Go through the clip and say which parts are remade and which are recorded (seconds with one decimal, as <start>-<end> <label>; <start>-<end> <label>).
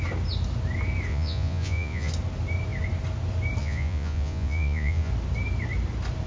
0.0-1.1 recorded; 1.1-2.1 remade; 2.1-3.6 recorded; 3.6-5.1 remade; 5.1-6.3 recorded